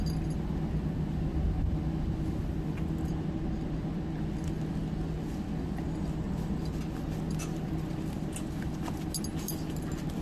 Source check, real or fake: real